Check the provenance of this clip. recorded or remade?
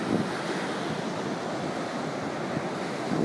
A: recorded